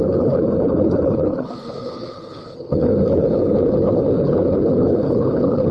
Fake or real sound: fake